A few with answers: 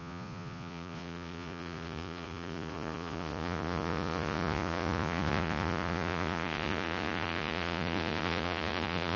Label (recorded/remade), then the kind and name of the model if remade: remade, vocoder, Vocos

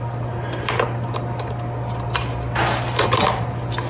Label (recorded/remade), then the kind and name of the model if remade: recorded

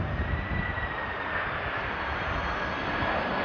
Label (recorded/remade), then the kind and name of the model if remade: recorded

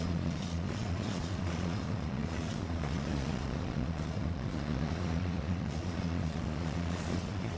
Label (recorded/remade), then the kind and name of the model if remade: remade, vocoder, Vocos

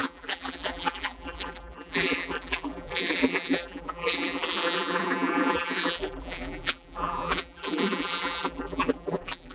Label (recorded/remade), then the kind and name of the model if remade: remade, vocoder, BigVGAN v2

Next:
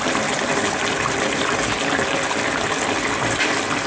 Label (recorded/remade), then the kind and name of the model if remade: recorded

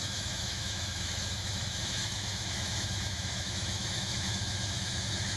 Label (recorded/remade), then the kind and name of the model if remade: remade, autoencoder, DAC-VAE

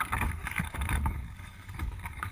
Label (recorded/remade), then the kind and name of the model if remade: remade, codec, DAC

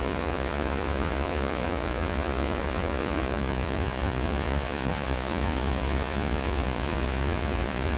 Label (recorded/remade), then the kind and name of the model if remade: remade, vocoder, Vocos